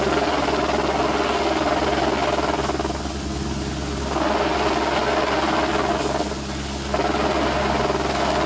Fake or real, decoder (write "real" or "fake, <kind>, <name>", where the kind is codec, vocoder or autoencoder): real